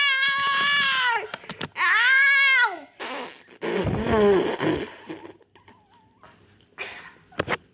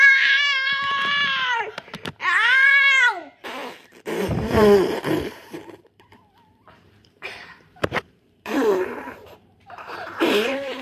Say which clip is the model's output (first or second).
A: second